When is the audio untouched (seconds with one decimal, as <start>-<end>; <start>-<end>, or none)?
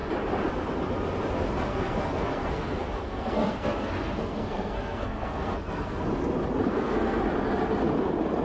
0.0-1.7; 6.0-6.7; 7.2-8.4